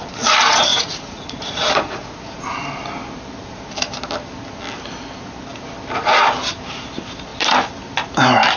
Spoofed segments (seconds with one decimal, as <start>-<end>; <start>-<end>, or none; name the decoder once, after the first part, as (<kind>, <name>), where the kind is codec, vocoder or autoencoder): 0.7-2.4 (vocoder, Vocos)